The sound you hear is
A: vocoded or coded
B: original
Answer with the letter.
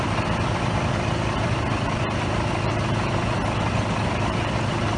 B